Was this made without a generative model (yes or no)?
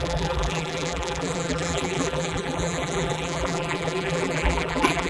no